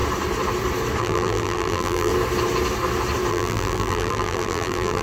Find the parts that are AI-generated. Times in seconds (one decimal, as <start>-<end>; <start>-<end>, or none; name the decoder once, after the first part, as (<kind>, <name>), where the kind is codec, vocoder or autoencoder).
1.0-2.1 (vocoder, BigVGAN v2); 3.3-5.0